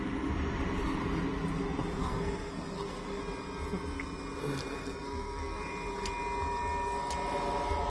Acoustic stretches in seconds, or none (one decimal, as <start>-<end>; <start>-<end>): 0.0-2.0; 3.2-4.7; 5.7-7.9